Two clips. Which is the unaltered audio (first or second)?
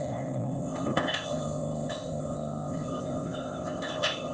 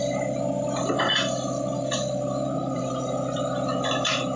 second